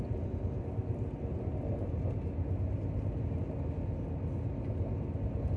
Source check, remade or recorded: recorded